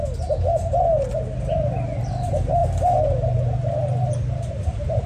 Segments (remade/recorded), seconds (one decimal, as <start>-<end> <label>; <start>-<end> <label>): 0.0-2.0 recorded; 2.0-2.6 remade; 2.6-4.5 recorded; 4.5-5.1 remade